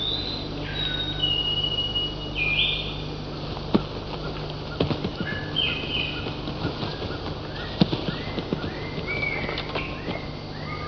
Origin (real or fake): real